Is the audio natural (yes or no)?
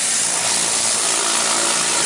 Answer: yes